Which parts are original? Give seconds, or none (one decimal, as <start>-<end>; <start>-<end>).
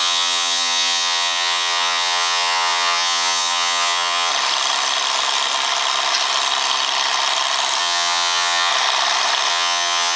4.3-7.8; 8.7-9.5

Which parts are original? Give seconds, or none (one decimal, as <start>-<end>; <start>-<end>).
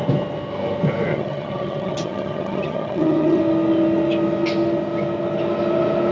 0.0-1.1; 3.4-6.1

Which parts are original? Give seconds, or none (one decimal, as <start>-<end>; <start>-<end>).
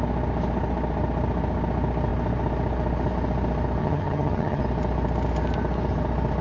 0.0-3.8; 4.6-6.4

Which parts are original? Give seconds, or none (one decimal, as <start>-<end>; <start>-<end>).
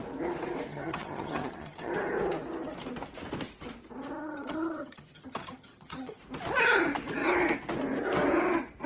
0.0-0.7; 1.9-4.2; 6.2-8.9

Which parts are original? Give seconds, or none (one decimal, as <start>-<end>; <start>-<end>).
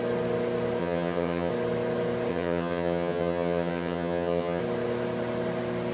0.0-0.8; 1.5-2.3; 4.6-5.9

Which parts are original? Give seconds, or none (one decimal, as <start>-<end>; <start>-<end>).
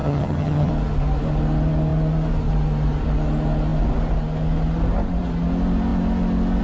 0.7-6.6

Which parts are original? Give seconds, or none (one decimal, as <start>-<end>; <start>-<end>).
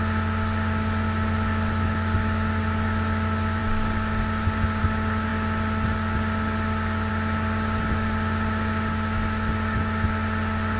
0.0-10.8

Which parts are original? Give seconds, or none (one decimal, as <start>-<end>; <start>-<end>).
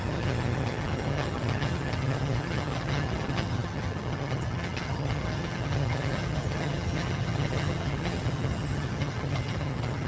none